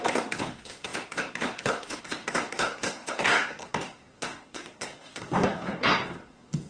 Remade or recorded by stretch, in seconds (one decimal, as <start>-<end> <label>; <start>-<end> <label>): 0.0-6.7 remade